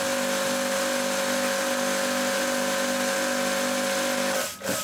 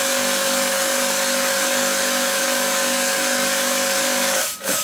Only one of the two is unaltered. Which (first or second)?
first